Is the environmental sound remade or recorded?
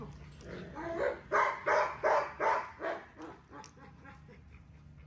recorded